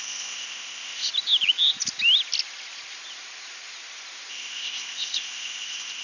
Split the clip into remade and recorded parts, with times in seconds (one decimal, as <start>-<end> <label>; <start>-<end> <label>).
0.0-1.1 remade; 1.1-4.3 recorded; 4.3-6.0 remade